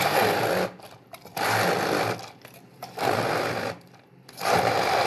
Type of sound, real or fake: real